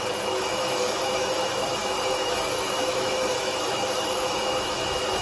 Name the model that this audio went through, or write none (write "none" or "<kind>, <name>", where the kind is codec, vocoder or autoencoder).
autoencoder, DAC-VAE